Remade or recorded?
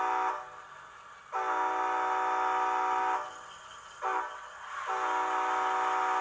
recorded